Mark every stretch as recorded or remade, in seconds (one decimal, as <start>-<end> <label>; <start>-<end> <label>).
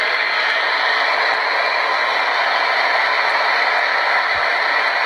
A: 0.0-3.9 recorded; 3.9-4.6 remade; 4.6-5.1 recorded